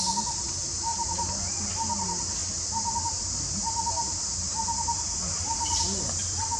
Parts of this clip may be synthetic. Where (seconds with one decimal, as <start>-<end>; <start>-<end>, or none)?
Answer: 0.9-1.7; 2.4-5.8

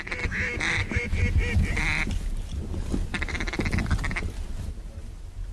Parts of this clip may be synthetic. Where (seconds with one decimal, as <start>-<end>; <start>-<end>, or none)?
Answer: 1.8-5.1

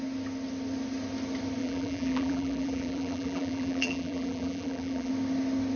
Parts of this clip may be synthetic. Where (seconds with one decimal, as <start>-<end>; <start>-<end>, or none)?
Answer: 1.6-5.1

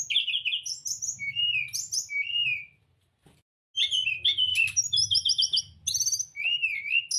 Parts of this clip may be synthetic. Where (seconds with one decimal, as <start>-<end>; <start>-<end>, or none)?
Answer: none